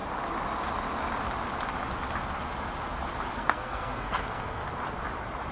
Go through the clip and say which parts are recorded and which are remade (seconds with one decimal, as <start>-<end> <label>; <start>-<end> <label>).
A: 0.0-3.3 recorded; 3.3-4.6 remade; 4.6-5.5 recorded